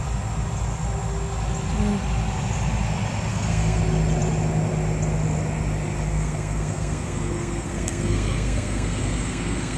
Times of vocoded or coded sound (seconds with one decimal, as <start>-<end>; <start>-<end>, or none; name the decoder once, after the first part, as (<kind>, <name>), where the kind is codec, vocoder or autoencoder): 3.3-3.8 (codec, SNAC); 6.1-9.8